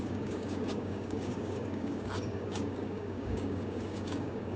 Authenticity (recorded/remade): remade